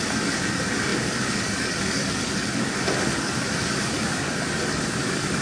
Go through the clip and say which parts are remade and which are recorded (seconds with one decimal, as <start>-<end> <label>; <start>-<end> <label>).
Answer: 0.0-5.4 remade